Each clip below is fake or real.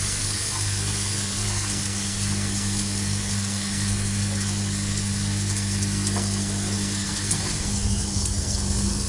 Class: fake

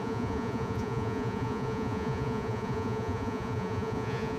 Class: fake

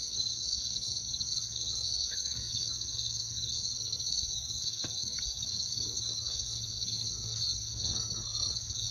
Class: fake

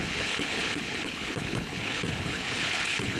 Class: fake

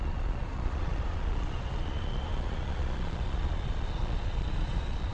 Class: fake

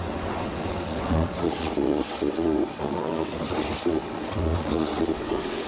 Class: fake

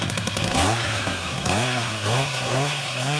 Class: fake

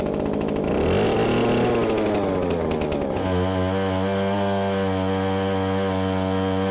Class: real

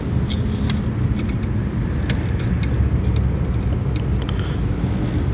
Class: real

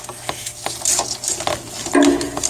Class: real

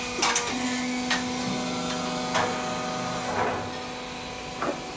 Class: real